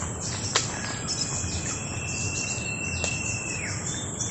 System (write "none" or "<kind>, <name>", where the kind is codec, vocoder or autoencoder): vocoder, BigVGAN v2